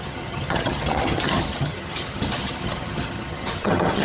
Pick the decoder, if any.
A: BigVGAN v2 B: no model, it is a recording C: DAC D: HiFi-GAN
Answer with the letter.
D